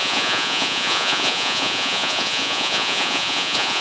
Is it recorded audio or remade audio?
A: remade